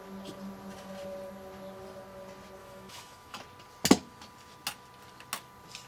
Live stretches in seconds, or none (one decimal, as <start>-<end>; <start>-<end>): 0.0-2.6; 3.4-5.9